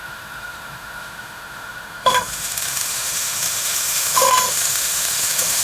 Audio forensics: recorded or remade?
remade